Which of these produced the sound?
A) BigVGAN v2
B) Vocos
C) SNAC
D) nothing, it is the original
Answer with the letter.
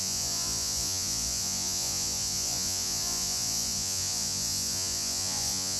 B